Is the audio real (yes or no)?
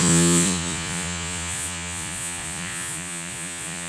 no